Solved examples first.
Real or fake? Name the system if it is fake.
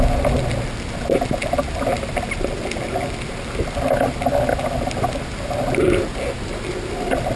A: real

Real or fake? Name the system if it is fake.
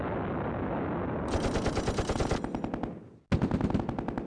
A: real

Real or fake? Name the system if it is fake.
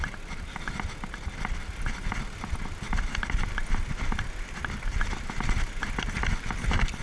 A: real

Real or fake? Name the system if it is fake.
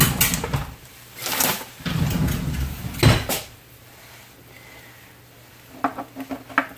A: real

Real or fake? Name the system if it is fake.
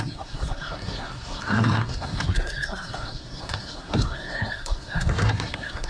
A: fake, codec, SNAC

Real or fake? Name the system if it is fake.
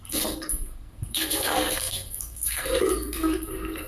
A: fake, codec, SNAC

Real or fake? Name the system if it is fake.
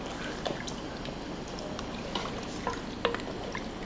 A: real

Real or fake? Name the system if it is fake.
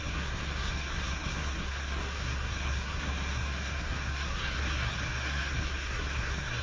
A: fake, codec, SNAC